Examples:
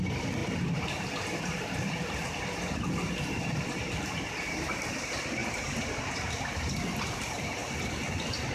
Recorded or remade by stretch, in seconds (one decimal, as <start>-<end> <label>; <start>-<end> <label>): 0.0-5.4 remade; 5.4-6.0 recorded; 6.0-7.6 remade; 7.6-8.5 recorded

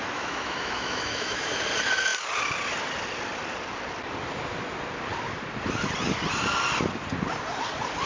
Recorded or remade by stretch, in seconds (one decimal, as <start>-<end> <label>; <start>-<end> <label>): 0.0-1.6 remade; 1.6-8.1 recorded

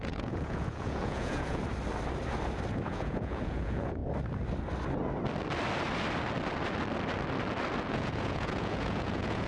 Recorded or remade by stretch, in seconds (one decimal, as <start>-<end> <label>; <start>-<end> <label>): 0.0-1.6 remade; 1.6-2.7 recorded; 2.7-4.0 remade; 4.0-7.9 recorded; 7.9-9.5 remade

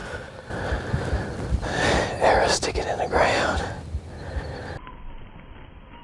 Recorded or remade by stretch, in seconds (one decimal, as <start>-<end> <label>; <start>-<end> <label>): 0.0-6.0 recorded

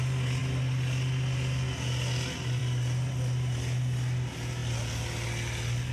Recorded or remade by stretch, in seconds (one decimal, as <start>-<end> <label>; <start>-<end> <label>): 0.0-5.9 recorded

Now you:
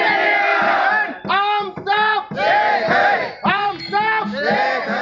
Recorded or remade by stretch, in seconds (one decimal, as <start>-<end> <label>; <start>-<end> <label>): 0.0-0.5 recorded; 0.5-1.3 remade; 1.3-3.0 recorded; 3.0-3.7 remade; 3.7-5.0 recorded

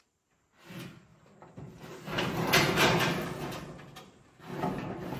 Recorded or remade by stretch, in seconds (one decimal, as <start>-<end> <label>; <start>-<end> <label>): 0.0-5.2 recorded